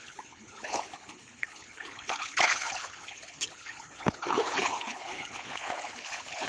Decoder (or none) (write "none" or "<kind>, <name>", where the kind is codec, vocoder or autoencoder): codec, HILCodec